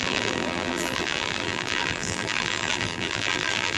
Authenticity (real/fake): fake